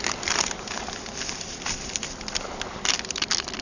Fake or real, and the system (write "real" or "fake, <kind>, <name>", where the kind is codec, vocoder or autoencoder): real